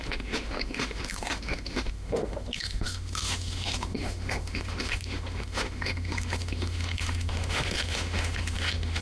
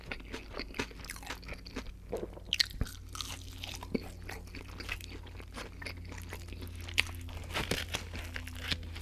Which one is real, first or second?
second